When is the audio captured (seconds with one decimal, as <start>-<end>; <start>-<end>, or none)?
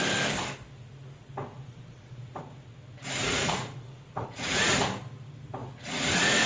0.0-1.5; 2.4-3.2; 4.7-5.6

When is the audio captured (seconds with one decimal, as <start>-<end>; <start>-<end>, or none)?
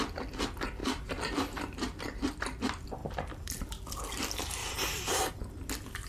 0.0-0.8; 2.0-3.0; 3.7-4.6; 5.3-6.1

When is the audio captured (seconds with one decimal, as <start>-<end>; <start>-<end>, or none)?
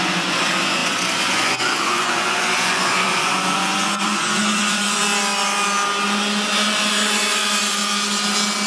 5.0-6.9; 7.8-8.7